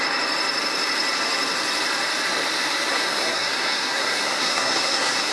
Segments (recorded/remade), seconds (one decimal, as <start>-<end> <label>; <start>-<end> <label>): 0.0-2.9 recorded; 2.9-5.3 remade